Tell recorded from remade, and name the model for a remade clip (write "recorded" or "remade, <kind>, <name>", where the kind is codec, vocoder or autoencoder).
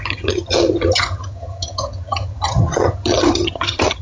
remade, vocoder, HiFi-GAN